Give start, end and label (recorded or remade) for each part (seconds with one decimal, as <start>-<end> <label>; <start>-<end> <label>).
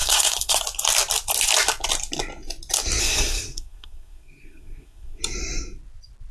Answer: 0.0-0.6 remade; 0.6-3.0 recorded; 3.0-5.2 remade; 5.2-6.3 recorded